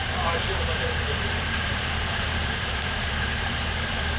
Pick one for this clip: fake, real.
fake